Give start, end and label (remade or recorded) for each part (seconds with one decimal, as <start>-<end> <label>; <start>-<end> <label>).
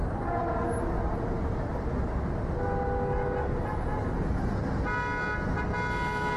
0.0-6.4 recorded